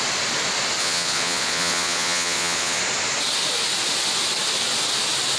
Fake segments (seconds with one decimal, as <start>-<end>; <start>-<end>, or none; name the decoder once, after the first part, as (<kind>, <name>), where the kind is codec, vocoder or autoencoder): 0.8-2.8 (vocoder, Vocos)